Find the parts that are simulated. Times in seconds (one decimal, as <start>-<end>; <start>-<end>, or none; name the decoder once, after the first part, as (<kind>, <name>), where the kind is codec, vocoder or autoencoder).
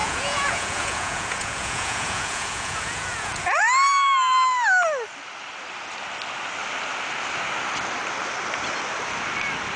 0.0-3.6 (vocoder, Vocos)